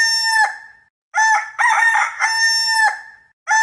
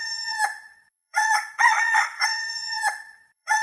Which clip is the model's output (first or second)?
second